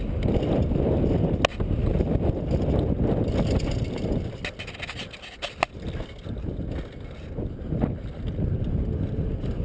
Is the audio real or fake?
real